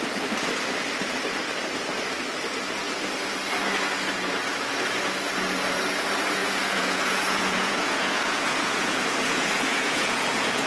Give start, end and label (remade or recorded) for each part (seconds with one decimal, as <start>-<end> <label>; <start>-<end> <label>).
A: 0.0-6.4 recorded; 6.4-10.7 remade

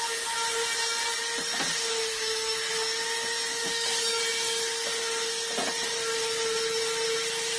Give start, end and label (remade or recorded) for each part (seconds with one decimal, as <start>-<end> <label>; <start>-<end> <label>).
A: 0.0-2.1 recorded; 2.1-2.7 remade; 2.7-3.5 recorded; 3.5-4.2 remade; 4.2-7.6 recorded